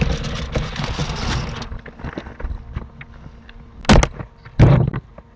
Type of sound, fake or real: real